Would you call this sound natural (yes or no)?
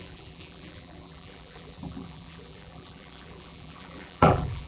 no